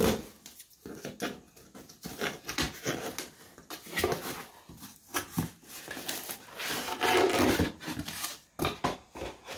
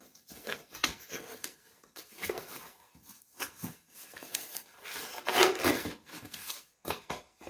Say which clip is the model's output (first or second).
second